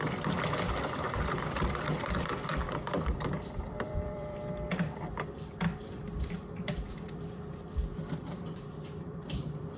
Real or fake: fake